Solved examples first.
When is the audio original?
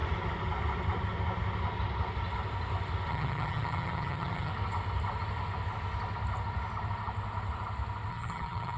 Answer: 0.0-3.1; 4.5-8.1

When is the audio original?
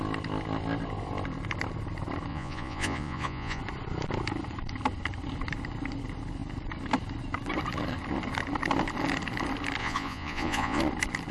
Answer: 0.0-2.3; 3.6-9.8; 10.8-11.3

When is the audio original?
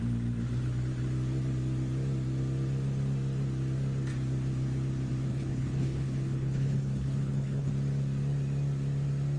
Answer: 0.0-5.3; 7.7-9.4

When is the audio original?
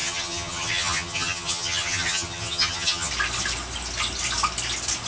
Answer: 3.1-5.1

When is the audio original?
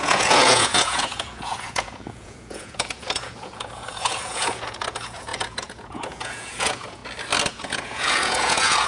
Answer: 7.0-7.5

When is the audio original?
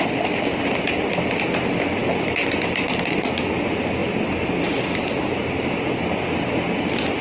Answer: 0.0-7.2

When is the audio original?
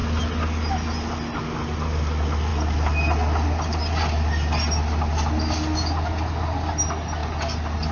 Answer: 0.0-7.9